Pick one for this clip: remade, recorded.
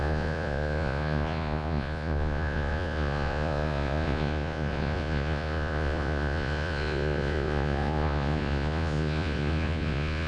remade